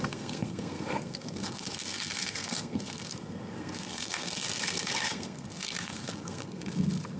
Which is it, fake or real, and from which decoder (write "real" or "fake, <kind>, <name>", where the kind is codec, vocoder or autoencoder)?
fake, codec, SNAC